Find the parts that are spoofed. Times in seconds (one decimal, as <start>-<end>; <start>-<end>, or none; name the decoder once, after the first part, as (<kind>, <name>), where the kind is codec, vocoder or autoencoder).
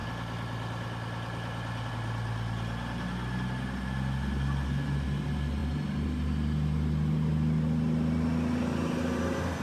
none